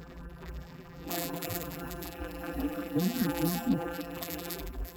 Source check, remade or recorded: remade